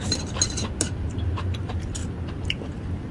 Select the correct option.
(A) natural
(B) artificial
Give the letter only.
A